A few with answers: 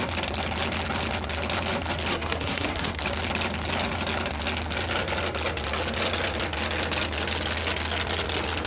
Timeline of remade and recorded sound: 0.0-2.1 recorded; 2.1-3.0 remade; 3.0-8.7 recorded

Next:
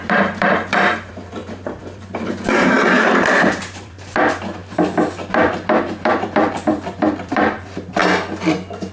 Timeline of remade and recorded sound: 0.0-8.0 remade; 8.0-8.9 recorded

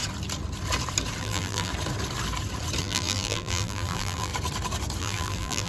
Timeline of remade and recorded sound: 0.0-1.2 recorded; 1.2-1.7 remade; 1.7-2.8 recorded; 2.8-4.3 remade; 4.3-5.0 recorded; 5.0-5.7 remade

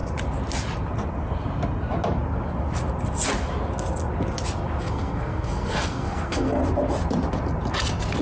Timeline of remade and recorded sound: 0.0-4.8 recorded; 4.8-6.6 remade; 6.6-8.2 recorded

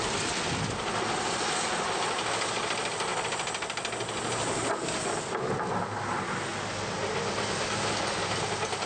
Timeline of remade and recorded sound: 0.0-8.9 recorded

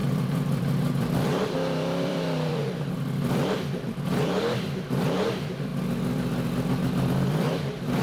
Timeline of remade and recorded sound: 0.0-5.7 remade; 5.7-7.3 recorded; 7.3-8.0 remade

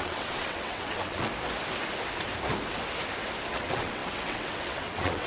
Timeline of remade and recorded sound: 0.0-1.3 remade; 1.3-3.5 recorded; 3.5-5.3 remade